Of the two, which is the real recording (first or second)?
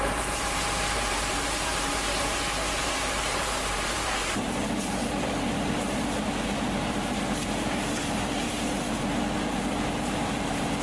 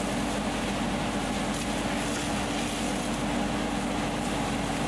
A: second